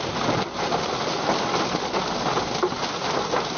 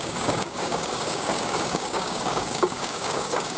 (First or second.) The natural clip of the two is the first